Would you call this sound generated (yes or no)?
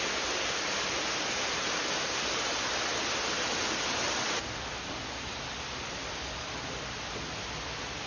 no